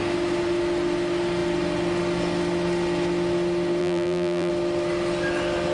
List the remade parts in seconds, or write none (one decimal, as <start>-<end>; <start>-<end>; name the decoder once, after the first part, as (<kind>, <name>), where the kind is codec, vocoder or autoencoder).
3.8-4.5 (vocoder, BigVGAN v2)